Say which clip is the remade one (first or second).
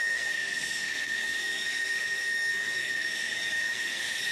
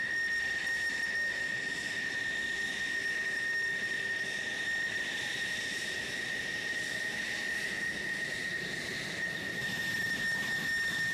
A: first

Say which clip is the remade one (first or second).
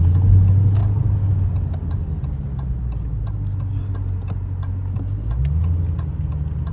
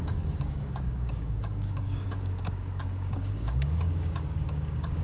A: second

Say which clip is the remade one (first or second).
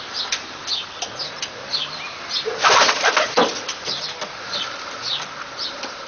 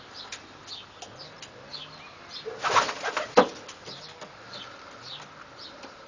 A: first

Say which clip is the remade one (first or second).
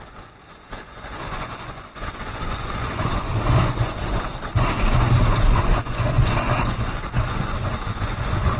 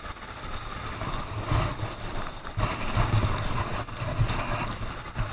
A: first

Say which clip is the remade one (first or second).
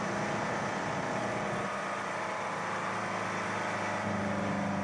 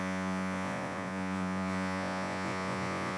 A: second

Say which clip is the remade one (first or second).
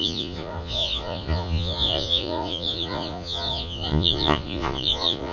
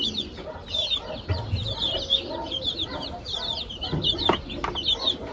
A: first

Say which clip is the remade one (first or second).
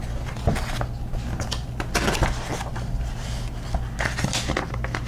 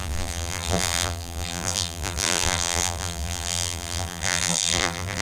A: second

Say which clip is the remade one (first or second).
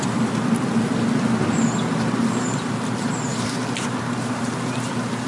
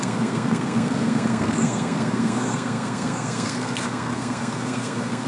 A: second